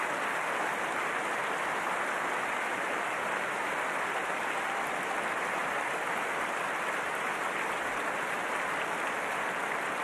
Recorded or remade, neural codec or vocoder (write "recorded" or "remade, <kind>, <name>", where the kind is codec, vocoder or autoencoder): recorded